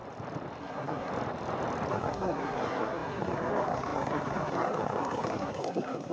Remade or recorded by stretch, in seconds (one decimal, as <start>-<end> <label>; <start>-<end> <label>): 0.0-0.6 recorded; 0.6-1.1 remade; 1.1-1.9 recorded; 1.9-6.1 remade